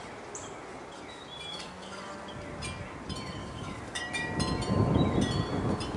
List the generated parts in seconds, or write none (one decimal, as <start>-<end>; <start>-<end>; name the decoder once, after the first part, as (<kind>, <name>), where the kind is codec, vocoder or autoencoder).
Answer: 1.5-2.1 (codec, DAC); 3.4-4.0